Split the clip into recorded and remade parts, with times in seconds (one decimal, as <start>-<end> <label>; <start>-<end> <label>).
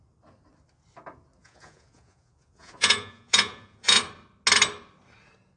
0.0-1.4 recorded; 1.4-4.0 remade; 4.0-5.6 recorded